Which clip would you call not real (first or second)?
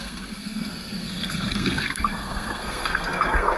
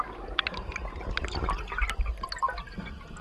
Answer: first